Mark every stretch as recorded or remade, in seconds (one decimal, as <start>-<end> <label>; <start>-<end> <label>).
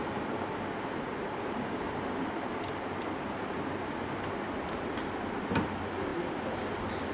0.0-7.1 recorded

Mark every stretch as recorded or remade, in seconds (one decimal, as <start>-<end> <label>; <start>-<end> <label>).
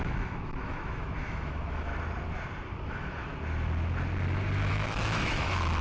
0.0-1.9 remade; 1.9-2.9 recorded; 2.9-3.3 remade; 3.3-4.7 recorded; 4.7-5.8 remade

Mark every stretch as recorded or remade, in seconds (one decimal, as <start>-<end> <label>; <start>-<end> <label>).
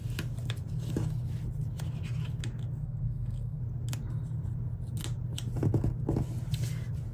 0.0-2.8 recorded; 2.8-3.6 remade; 3.6-7.1 recorded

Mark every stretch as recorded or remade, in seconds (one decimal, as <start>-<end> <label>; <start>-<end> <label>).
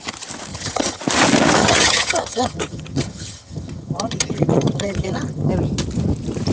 0.0-0.5 recorded; 0.5-1.0 remade; 1.0-1.6 recorded; 1.6-5.5 remade; 5.5-6.5 recorded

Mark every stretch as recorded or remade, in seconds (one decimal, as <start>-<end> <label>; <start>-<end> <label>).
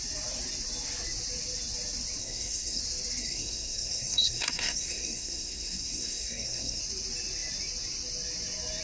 0.0-2.2 recorded; 2.2-2.8 remade; 2.8-3.2 recorded; 3.2-6.8 remade; 6.8-8.8 recorded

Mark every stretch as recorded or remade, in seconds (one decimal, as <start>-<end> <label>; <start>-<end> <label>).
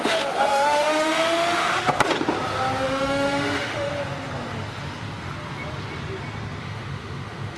0.0-1.7 remade; 1.7-2.8 recorded; 2.8-3.9 remade; 3.9-6.6 recorded; 6.6-7.6 remade